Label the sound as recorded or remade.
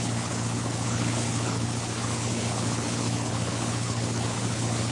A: remade